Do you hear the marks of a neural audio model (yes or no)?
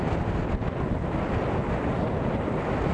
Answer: no